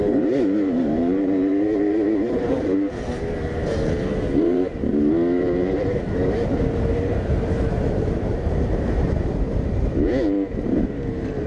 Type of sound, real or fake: fake